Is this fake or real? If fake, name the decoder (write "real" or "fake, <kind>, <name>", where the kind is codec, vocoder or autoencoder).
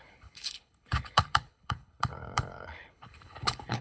fake, codec, HILCodec